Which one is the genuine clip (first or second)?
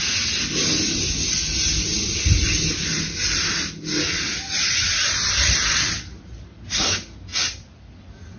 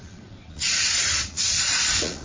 first